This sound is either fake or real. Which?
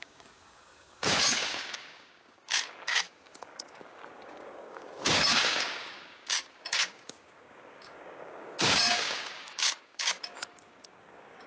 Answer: fake